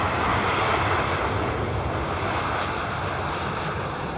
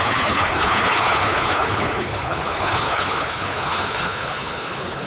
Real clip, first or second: first